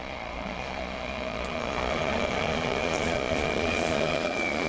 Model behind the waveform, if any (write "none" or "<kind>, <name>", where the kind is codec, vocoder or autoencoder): vocoder, Vocos